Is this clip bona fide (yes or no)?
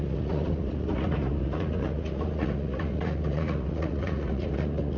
no